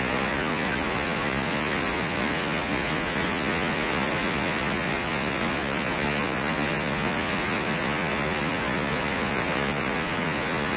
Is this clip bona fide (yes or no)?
no